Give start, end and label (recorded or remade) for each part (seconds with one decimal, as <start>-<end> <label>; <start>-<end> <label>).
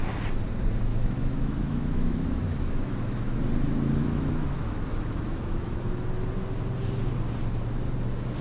0.0-0.9 recorded; 0.9-3.4 remade; 3.4-4.0 recorded; 4.0-5.8 remade; 5.8-8.4 recorded